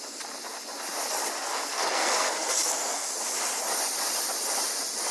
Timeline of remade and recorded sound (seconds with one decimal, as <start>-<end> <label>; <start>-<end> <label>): 0.0-1.5 recorded; 1.5-3.1 remade; 3.1-5.1 recorded